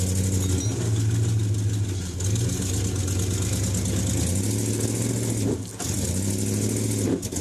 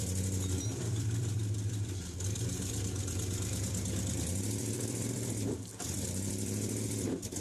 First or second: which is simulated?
second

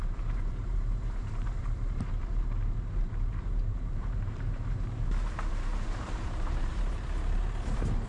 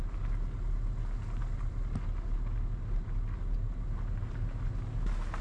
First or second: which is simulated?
first